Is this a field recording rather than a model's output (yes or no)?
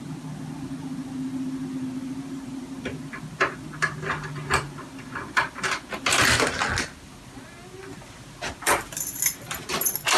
yes